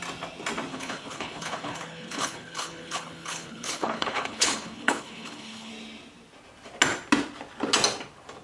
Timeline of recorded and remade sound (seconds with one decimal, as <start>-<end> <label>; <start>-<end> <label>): 0.0-0.7 recorded; 0.7-5.7 remade; 5.7-8.4 recorded